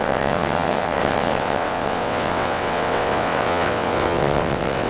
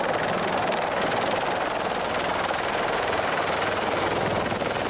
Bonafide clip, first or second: second